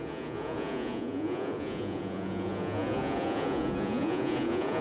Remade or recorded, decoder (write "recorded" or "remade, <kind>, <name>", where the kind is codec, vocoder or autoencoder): remade, vocoder, Vocos